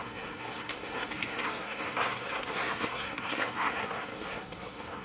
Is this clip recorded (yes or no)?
no